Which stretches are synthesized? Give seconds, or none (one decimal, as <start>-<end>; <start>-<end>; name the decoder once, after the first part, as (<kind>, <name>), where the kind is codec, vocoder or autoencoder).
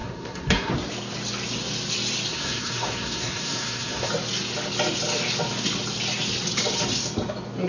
0.0-0.7 (codec, SNAC); 2.3-4.1